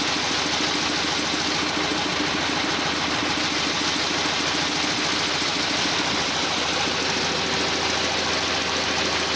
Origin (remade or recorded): recorded